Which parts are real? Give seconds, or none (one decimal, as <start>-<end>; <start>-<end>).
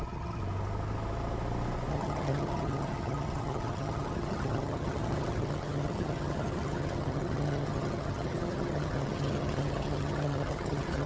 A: 0.4-1.9